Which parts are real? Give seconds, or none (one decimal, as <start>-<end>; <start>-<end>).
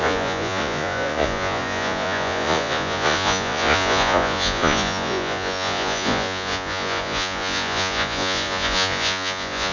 none